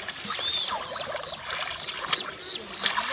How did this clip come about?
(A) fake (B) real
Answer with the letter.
B